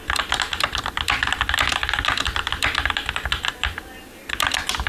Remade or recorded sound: recorded